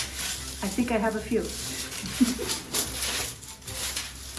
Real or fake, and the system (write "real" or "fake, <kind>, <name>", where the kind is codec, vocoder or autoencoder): real